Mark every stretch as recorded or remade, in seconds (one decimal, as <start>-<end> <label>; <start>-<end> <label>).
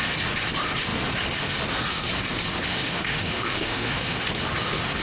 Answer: 0.0-2.7 recorded; 2.7-4.2 remade; 4.2-5.0 recorded